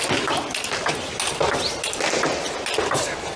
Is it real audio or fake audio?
real